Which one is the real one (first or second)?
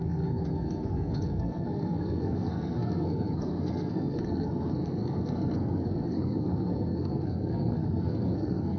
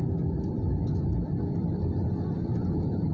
second